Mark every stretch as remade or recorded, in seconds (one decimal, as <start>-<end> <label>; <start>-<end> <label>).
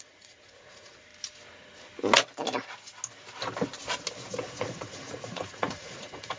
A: 0.0-1.1 remade; 1.1-4.6 recorded; 4.6-6.4 remade